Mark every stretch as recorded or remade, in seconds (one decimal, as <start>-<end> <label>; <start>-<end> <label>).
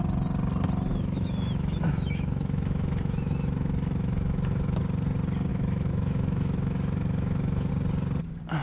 0.0-0.9 recorded; 0.9-4.8 remade; 4.8-5.5 recorded; 5.5-7.7 remade; 7.7-8.6 recorded